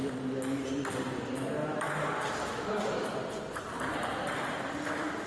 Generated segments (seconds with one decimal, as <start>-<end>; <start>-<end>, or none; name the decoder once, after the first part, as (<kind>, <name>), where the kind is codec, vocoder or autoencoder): 1.6-4.8 (vocoder, BigVGAN v2)